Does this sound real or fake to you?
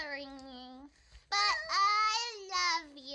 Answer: real